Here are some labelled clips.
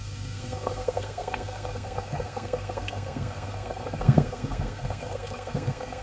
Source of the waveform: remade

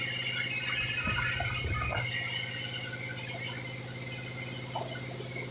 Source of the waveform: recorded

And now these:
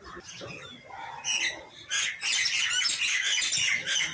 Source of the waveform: recorded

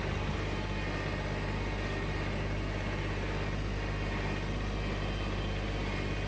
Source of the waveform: recorded